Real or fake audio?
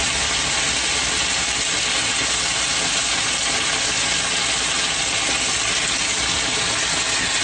real